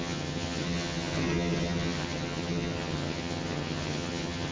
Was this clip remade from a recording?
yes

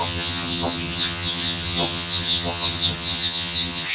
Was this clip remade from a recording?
yes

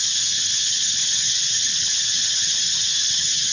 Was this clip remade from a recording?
yes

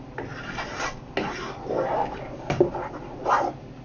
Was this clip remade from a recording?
no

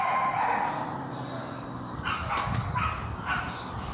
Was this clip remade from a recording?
no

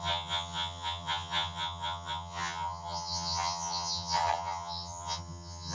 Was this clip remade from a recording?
yes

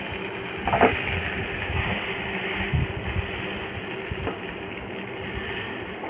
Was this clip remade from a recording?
no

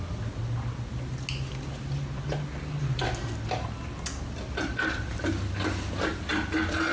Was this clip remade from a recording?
no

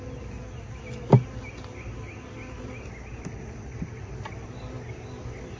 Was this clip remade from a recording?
no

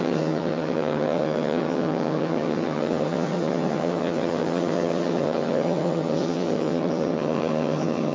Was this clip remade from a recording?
yes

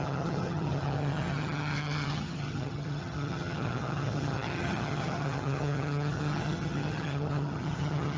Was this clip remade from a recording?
yes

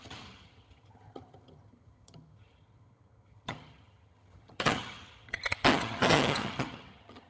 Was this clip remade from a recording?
yes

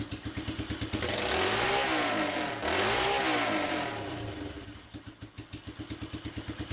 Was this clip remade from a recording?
no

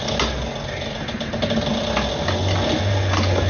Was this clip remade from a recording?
no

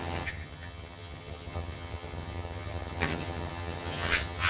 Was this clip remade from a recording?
yes